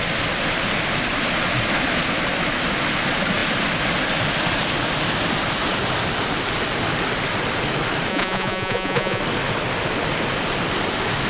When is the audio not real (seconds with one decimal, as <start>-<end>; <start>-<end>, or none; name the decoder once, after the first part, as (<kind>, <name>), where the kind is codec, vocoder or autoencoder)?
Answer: 8.1-9.2 (vocoder, Vocos)